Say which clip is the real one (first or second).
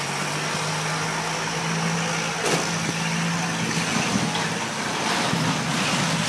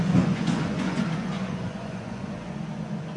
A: first